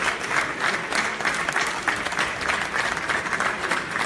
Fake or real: real